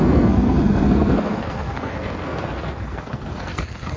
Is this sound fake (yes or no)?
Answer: yes